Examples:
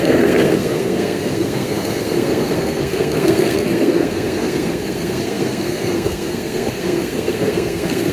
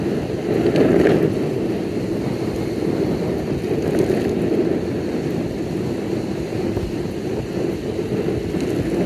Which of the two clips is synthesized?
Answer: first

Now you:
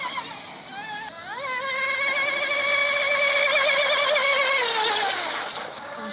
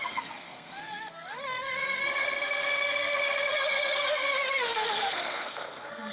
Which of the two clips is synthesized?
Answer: second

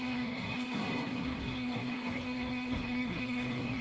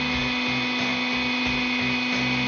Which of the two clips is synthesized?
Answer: first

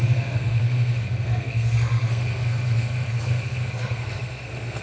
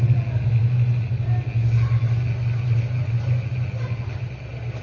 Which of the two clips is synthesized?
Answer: first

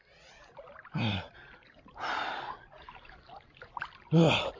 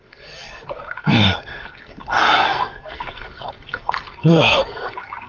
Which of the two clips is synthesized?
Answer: second